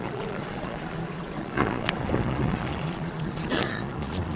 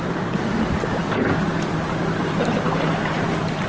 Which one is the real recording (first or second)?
second